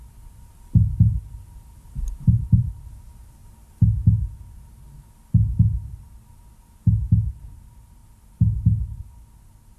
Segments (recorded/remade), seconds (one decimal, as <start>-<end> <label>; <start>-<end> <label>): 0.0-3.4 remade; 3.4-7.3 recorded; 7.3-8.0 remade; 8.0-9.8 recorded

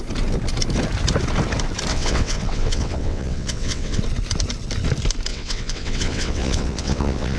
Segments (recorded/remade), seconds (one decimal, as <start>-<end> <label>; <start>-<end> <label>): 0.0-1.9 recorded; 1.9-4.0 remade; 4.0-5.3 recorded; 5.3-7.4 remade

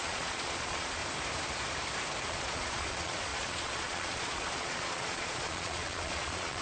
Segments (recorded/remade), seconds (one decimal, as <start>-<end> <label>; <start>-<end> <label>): 0.0-1.0 remade; 1.0-2.3 recorded; 2.3-6.6 remade

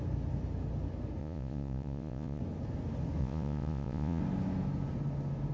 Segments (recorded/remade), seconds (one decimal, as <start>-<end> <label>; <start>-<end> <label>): 0.0-1.2 recorded; 1.2-2.4 remade; 2.4-3.2 recorded; 3.2-4.2 remade; 4.2-5.5 recorded

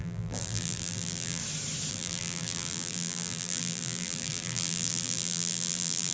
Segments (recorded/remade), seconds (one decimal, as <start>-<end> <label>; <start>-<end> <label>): 0.0-1.4 remade; 1.4-1.9 recorded; 1.9-6.1 remade

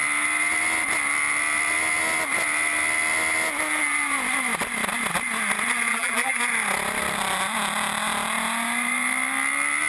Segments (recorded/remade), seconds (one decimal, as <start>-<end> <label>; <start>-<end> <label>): 0.0-5.9 recorded; 5.9-6.4 remade; 6.4-9.9 recorded

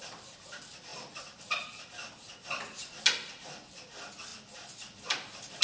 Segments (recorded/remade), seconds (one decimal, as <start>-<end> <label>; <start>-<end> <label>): 0.0-5.6 recorded